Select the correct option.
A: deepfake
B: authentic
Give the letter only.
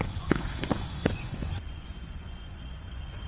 A